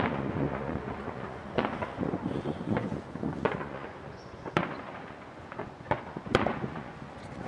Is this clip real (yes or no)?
no